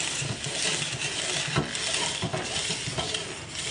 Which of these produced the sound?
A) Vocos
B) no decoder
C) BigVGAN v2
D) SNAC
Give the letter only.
B